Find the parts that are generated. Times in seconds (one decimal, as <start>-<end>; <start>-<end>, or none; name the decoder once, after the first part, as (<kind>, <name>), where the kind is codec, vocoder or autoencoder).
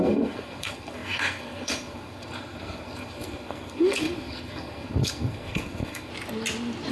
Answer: 0.0-6.1 (codec, SNAC)